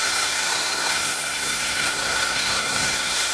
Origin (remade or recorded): remade